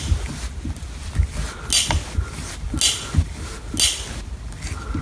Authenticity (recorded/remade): recorded